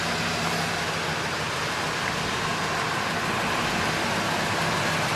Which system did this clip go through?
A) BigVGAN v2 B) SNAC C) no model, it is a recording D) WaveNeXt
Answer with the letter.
C